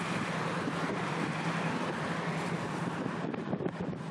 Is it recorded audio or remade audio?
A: remade